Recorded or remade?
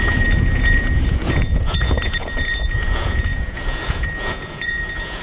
remade